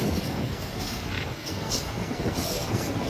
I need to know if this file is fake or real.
fake